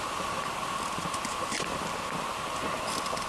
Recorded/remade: recorded